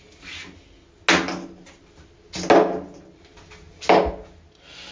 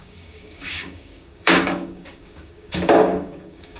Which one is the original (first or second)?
first